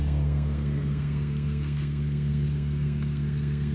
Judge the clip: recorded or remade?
remade